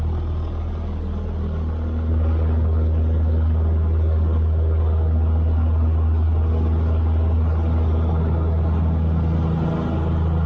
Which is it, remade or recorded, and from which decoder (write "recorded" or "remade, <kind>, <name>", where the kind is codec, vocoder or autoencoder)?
recorded